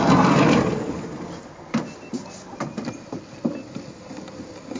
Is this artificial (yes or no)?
no